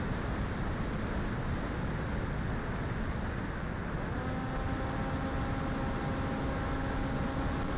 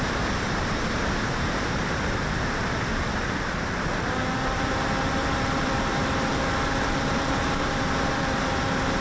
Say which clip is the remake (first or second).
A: second